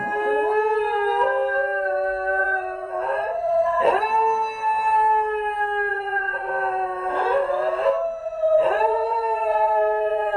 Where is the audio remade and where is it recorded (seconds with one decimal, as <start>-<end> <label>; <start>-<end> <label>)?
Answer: 0.0-2.4 recorded; 2.4-4.0 remade; 4.0-5.9 recorded; 5.9-6.5 remade; 6.5-8.2 recorded; 8.2-10.4 remade